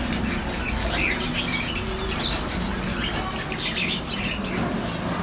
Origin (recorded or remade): recorded